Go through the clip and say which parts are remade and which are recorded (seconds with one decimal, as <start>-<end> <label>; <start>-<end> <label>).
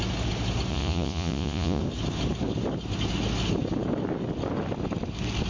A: 0.0-0.7 recorded; 0.7-1.8 remade; 1.8-5.5 recorded